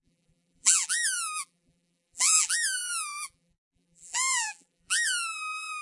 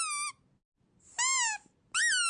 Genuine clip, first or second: second